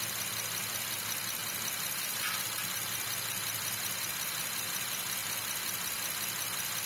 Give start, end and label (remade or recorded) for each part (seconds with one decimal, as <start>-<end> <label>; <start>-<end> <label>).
0.0-6.9 recorded